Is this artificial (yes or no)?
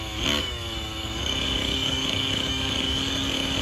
yes